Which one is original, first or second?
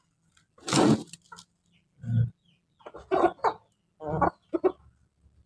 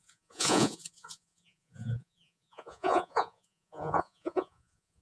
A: first